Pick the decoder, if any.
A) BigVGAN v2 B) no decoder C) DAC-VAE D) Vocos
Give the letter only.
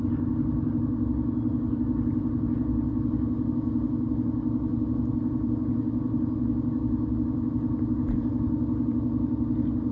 B